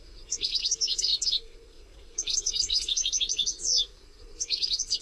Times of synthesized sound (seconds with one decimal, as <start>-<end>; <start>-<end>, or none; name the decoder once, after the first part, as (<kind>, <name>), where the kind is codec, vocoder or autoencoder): 0.0-5.0 (codec, SNAC)